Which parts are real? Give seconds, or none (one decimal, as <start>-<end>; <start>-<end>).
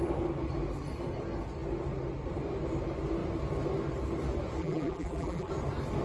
0.0-4.6; 5.5-6.0